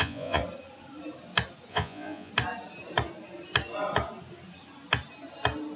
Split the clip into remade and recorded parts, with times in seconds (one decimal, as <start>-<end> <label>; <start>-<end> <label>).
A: 0.0-0.4 remade; 0.4-1.7 recorded; 1.7-2.3 remade; 2.3-5.8 recorded